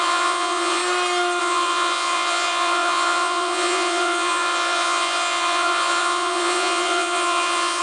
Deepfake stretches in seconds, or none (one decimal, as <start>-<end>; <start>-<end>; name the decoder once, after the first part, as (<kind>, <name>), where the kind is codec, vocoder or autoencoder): 0.0-0.8 (vocoder, Vocos); 1.4-7.8